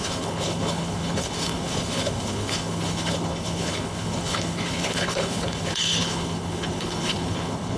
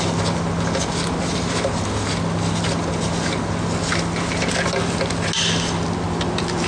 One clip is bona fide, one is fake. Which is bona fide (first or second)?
second